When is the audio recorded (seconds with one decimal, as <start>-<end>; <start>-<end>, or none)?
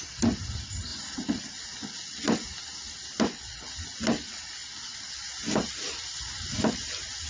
0.0-7.3